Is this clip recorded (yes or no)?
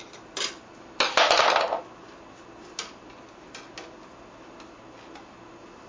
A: yes